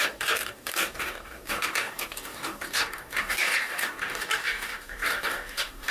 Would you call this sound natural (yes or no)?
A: no